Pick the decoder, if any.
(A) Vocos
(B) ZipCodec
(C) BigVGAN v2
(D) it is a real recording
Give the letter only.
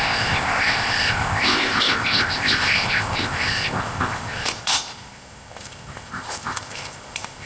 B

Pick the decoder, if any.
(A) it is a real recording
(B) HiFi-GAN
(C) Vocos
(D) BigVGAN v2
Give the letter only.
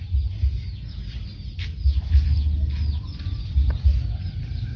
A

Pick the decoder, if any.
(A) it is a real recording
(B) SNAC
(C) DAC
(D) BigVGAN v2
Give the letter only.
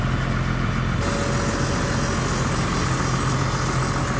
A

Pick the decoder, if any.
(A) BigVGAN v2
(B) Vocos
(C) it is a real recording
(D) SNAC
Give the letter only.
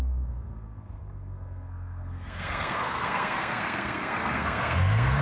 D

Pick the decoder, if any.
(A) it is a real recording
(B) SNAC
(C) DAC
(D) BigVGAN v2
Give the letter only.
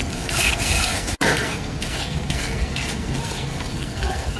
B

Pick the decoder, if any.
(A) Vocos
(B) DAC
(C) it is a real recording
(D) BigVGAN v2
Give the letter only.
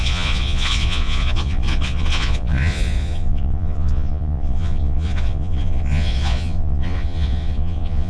A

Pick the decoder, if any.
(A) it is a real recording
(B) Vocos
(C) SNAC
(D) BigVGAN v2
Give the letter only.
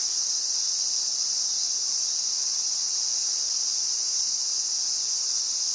D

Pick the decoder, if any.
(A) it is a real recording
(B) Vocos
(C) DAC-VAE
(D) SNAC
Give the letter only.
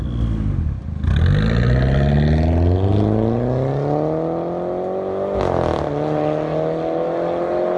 A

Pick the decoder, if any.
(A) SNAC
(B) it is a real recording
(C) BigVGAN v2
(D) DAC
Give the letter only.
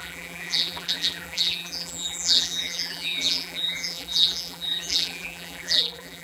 C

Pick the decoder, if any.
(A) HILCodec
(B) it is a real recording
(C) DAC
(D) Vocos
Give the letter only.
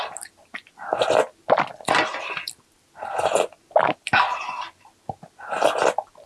B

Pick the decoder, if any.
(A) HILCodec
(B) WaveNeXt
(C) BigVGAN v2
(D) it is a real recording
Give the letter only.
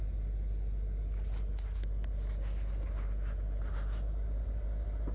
D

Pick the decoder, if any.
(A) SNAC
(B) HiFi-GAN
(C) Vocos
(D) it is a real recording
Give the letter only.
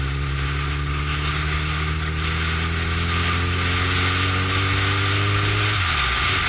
D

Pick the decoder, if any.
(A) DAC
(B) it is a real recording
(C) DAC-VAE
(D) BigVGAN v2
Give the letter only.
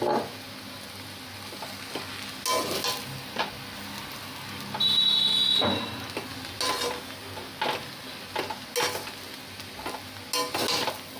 B